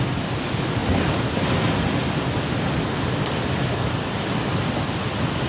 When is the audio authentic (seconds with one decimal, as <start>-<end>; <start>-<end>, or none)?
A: 0.0-5.5